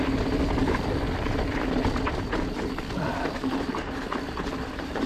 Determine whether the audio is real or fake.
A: fake